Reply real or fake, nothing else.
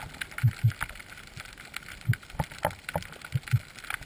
real